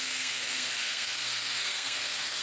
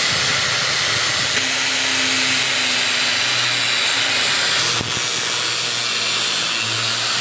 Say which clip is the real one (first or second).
second